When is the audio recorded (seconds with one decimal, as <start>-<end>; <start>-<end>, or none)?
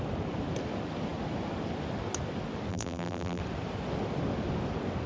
0.0-2.7; 3.4-5.1